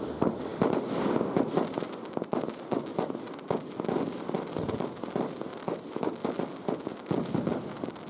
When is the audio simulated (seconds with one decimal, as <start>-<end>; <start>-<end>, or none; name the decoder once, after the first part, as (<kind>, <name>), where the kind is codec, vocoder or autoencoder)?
none

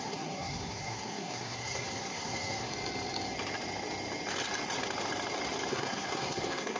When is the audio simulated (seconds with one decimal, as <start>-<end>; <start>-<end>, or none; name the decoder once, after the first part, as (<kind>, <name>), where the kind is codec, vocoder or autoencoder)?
0.0-2.7 (codec, SNAC); 5.7-6.8

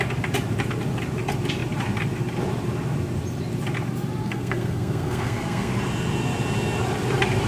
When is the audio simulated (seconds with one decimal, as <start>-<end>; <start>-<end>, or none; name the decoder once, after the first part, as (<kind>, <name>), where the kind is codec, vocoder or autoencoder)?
4.2-5.7 (codec, SNAC)

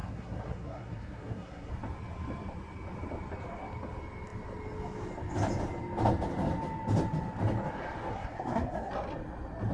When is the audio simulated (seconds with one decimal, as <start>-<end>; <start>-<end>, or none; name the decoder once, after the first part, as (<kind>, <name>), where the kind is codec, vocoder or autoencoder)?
0.0-1.7 (codec, SNAC); 8.1-8.9

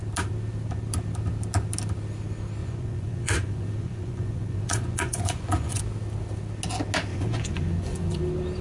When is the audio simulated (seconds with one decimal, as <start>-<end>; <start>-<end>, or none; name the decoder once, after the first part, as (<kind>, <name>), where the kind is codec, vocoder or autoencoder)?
2.6-5.8 (vocoder, Vocos); 7.1-8.2

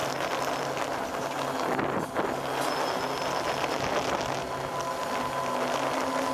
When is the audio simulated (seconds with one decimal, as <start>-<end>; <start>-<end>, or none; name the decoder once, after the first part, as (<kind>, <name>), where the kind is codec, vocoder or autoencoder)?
none

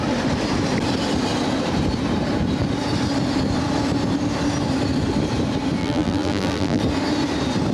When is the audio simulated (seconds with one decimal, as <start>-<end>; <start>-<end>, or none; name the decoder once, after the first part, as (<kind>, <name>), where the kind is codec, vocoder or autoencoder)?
5.8-6.8 (vocoder, BigVGAN v2)